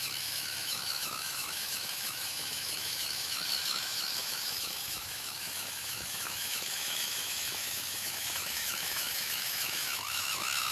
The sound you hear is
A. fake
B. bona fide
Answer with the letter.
A